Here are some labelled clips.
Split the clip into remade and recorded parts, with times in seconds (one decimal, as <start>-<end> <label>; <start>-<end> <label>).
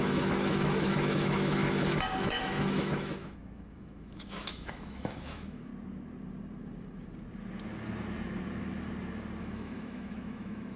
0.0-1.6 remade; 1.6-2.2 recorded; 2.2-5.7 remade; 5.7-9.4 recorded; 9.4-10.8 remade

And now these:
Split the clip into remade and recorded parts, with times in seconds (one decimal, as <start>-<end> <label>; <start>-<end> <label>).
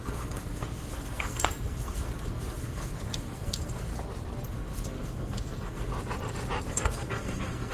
0.0-3.9 remade; 3.9-4.5 recorded; 4.5-5.9 remade; 5.9-6.7 recorded; 6.7-7.7 remade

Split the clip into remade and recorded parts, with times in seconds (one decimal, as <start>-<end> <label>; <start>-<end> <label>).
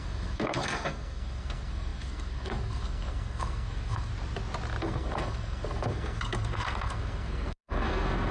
0.0-4.1 remade; 4.1-4.8 recorded; 4.8-8.3 remade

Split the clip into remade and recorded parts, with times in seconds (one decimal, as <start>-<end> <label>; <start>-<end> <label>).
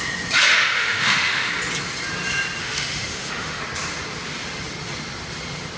0.0-0.5 recorded; 0.5-1.5 remade; 1.5-2.6 recorded; 2.6-3.6 remade; 3.6-5.8 recorded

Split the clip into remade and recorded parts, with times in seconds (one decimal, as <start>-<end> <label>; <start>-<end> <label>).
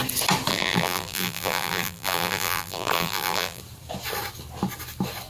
0.0-0.5 recorded; 0.5-3.6 remade; 3.6-5.3 recorded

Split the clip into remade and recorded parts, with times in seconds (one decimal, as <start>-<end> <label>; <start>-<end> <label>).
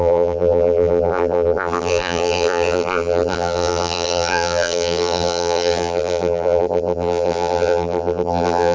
0.0-8.7 remade